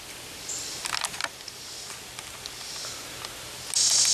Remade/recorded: recorded